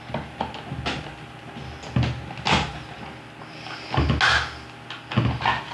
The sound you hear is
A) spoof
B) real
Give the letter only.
B